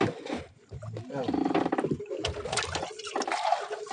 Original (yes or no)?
yes